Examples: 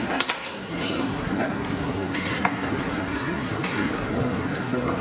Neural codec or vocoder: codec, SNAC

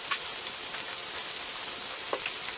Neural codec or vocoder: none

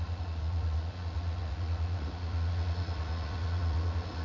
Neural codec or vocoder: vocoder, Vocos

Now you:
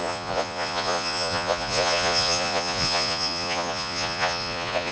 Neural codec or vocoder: vocoder, Vocos